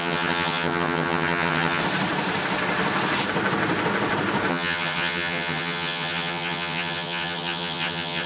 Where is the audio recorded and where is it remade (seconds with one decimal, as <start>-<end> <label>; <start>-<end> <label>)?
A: 0.0-1.8 remade; 1.8-4.5 recorded; 4.5-8.3 remade